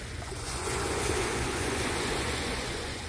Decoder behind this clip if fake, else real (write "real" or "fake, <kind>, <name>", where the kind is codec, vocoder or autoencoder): fake, vocoder, Vocos